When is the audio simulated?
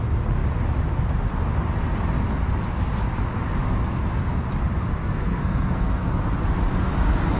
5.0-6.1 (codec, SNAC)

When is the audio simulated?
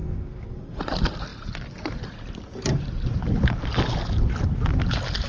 0.0-0.8 (codec, SNAC)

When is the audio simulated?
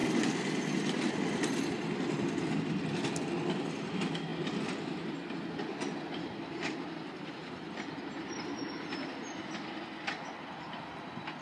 none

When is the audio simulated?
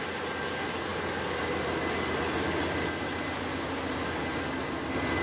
none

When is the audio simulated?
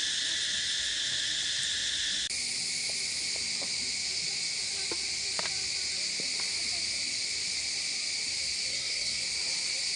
8.7-9.2 (codec, SNAC)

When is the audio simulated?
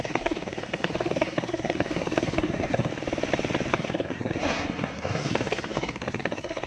0.0-2.9 (codec, SNAC); 3.7-6.7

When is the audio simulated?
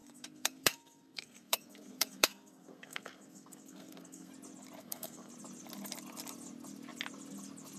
0.0-4.3 (codec, SNAC); 4.8-5.3